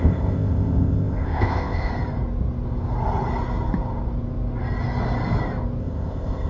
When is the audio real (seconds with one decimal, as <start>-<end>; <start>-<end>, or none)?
1.9-5.8